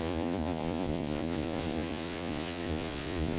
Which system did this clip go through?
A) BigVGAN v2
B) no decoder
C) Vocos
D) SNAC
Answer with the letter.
C